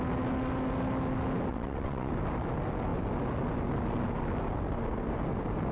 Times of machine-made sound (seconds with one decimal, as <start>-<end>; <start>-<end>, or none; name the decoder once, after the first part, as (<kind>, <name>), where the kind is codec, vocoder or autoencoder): 1.5-2.1 (vocoder, WaveNeXt)